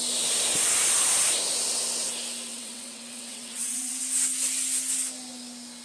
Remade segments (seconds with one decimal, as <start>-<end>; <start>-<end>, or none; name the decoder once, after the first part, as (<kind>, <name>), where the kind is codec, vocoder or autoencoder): 2.5-4.0 (vocoder, WaveNeXt)